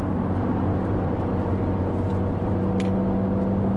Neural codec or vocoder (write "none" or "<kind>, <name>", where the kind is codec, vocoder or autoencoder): none